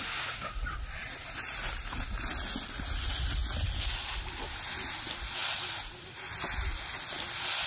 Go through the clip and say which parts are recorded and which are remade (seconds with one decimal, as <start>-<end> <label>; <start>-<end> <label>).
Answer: 0.0-7.7 recorded